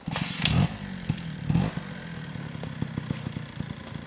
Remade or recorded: recorded